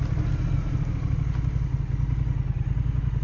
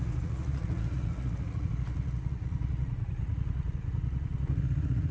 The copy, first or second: second